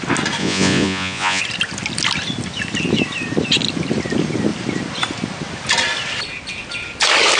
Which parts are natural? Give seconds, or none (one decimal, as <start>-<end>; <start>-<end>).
0.0-0.4; 1.4-7.4